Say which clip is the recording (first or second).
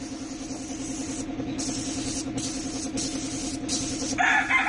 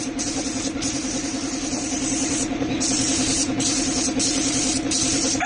first